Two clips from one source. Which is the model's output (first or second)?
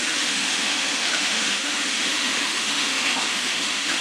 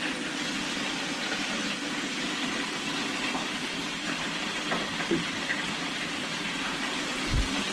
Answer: first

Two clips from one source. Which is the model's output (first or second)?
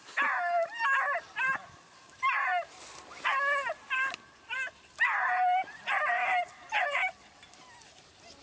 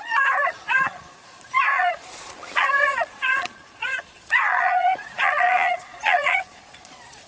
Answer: second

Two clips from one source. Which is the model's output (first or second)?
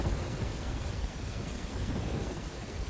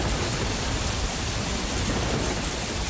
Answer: first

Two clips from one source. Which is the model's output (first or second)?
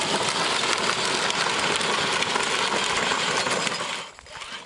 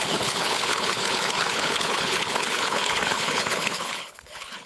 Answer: second